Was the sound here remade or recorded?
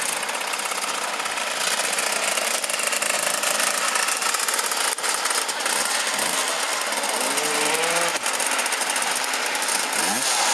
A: recorded